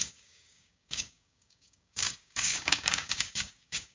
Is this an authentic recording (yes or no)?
no